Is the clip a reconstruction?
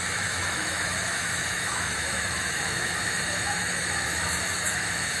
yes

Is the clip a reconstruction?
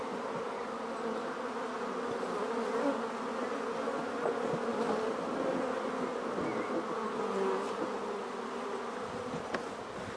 no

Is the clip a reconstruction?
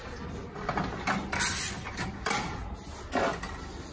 no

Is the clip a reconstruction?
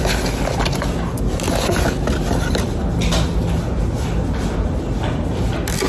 no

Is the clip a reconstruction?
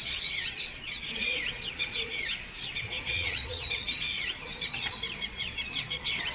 yes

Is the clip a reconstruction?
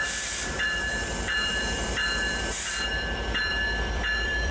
yes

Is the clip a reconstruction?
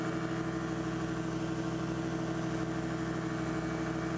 no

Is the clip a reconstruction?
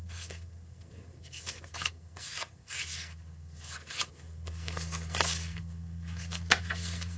yes